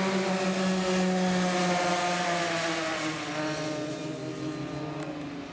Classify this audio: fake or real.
real